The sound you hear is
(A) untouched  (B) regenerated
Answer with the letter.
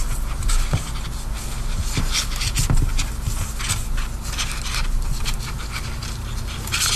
A